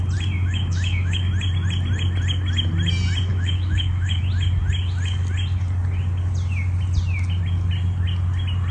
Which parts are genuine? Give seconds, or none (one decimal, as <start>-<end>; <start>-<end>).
0.0-0.4; 1.3-3.3; 4.2-8.7